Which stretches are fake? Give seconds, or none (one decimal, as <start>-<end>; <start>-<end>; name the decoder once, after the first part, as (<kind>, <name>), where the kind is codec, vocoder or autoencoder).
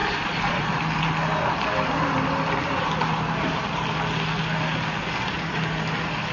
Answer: 0.0-0.7 (vocoder, Vocos)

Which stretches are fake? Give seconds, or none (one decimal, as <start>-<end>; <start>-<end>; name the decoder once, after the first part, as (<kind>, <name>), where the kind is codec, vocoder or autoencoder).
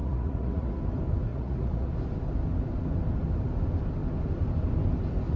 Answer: 0.0-0.8 (vocoder, Vocos); 1.3-1.9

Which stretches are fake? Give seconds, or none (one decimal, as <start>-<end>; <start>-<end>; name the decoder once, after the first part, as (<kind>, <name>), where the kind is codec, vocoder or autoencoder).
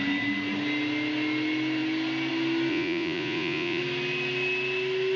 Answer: 2.7-3.8 (vocoder, Vocos)